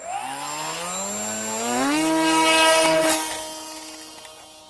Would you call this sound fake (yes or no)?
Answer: no